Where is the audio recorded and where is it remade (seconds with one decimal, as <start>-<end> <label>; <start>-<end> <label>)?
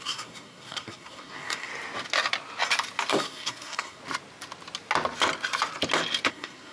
0.0-1.7 remade; 1.7-3.1 recorded; 3.1-4.0 remade; 4.0-6.3 recorded; 6.3-6.7 remade